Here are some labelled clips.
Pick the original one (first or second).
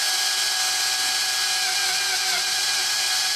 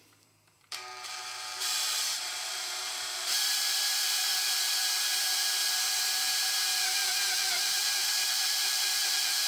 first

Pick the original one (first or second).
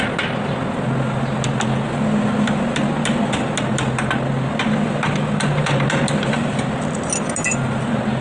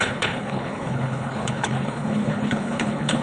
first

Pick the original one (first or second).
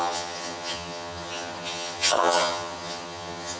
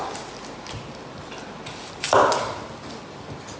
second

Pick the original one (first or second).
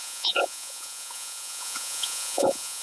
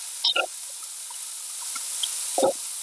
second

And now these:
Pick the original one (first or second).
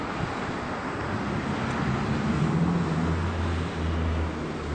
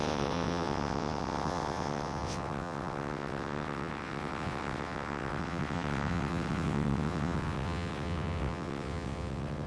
first